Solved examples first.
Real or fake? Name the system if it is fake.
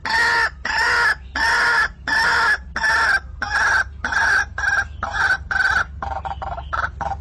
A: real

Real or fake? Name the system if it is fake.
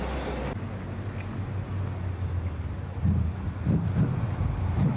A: real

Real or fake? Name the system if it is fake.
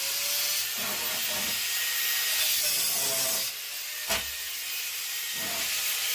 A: real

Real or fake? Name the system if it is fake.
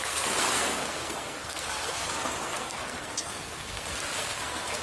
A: fake, codec, SNAC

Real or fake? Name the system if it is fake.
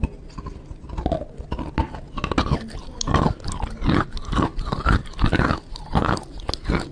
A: real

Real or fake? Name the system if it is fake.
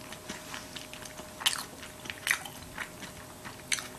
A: real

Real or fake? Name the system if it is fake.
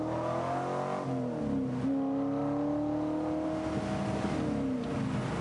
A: real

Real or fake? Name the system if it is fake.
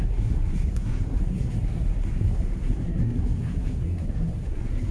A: fake, codec, SNAC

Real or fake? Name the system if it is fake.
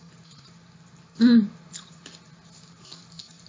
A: real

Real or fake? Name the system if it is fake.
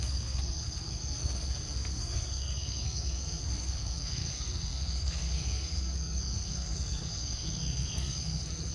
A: fake, codec, SNAC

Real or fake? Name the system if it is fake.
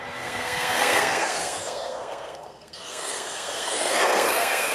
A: fake, codec, SNAC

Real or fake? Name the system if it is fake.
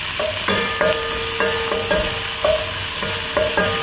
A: real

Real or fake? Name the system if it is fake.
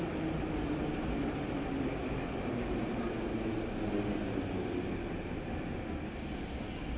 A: real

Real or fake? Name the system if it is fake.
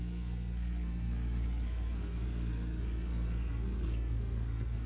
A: fake, codec, SNAC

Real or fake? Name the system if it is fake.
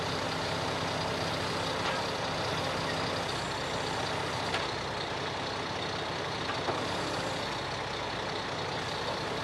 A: real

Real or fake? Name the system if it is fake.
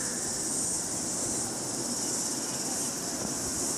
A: real